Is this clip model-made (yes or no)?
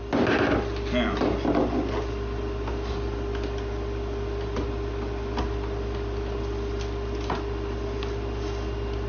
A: no